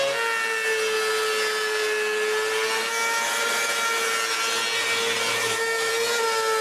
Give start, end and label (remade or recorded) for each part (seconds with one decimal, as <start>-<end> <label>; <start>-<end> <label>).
0.0-5.3 recorded; 5.3-5.9 remade; 5.9-6.6 recorded